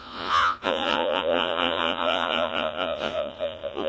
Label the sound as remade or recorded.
remade